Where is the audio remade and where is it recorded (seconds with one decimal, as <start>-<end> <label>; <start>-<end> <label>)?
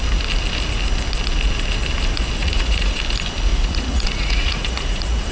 0.0-2.4 recorded; 2.4-3.0 remade; 3.0-3.5 recorded; 3.5-5.3 remade